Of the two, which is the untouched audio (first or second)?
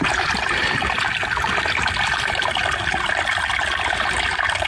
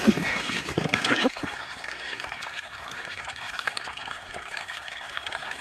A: first